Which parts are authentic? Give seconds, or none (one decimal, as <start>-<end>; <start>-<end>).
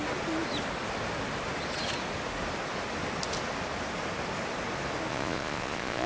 0.0-5.1